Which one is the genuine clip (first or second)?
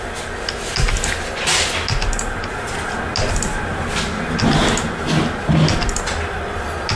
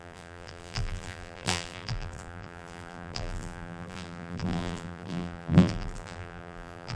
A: first